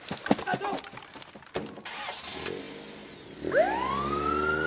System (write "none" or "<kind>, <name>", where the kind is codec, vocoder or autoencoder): none